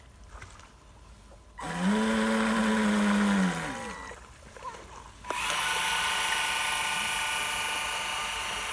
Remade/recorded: recorded